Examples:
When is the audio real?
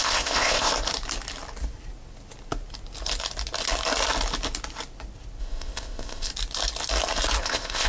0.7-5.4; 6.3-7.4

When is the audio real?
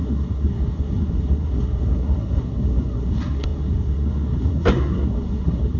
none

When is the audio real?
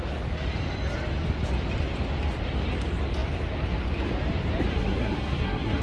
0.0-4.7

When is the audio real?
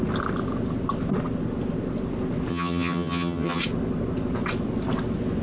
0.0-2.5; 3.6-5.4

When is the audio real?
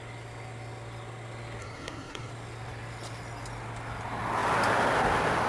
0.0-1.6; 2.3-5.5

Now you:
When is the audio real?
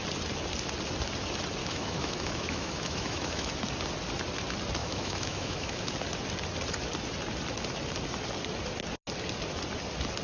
0.0-1.6; 3.5-4.8; 5.9-10.2